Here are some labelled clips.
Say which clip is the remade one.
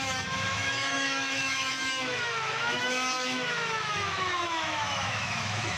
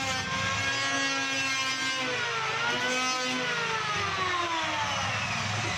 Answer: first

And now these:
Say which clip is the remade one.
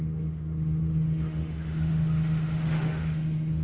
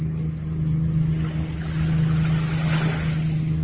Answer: first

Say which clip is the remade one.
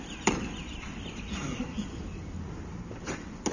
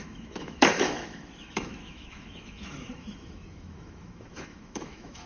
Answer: second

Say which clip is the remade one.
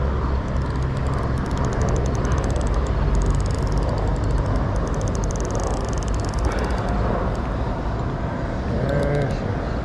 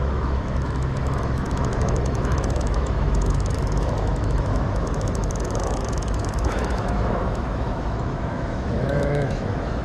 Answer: second